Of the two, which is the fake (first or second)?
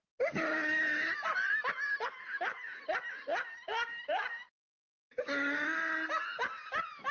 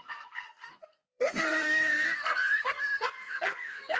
second